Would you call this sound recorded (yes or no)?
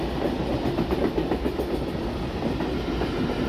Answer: yes